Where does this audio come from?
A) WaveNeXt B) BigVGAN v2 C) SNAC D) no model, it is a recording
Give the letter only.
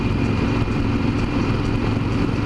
B